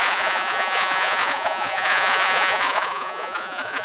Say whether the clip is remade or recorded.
remade